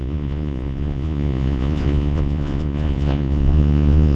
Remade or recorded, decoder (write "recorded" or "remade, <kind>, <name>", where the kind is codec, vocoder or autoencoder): remade, vocoder, Vocos